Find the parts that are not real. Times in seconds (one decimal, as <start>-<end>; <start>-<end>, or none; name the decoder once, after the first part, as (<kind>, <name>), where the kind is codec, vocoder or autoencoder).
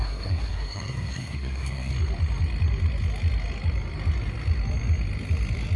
0.0-1.9 (codec, SNAC)